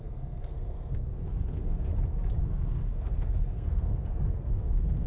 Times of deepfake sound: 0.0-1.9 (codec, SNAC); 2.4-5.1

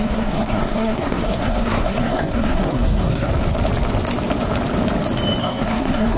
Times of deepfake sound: 0.0-3.3 (codec, SNAC); 5.4-6.2

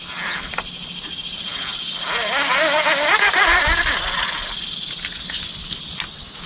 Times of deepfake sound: none

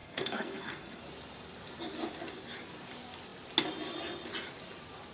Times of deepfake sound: 0.0-1.0 (codec, SNAC)

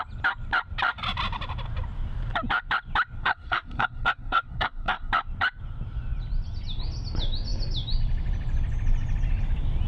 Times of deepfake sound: 3.2-5.1 (codec, SNAC)